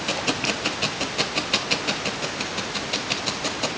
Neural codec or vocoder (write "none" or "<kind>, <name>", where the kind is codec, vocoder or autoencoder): none